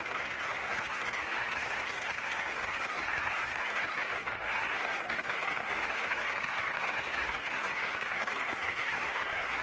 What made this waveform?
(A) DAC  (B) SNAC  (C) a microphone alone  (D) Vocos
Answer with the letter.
B